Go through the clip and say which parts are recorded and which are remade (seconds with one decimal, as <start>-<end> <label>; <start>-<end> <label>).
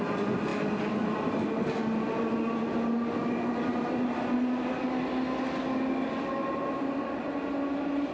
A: 0.0-8.1 recorded